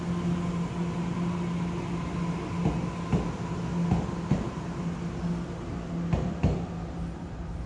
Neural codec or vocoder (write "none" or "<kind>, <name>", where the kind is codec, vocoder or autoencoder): none